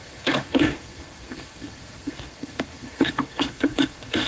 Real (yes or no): no